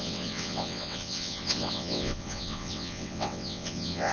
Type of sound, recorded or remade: remade